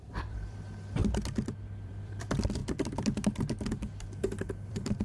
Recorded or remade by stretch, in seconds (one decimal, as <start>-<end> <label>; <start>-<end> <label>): 0.0-1.0 remade; 1.0-1.6 recorded; 1.6-5.0 remade